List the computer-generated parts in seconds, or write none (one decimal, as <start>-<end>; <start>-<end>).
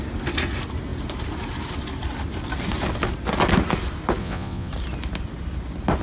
4.2-4.7